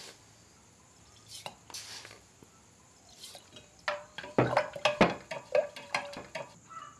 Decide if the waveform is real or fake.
real